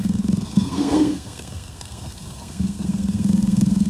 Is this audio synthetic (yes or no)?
yes